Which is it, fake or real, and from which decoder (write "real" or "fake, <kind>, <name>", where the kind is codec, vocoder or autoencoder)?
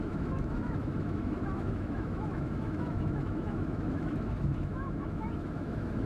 fake, autoencoder, DAC-VAE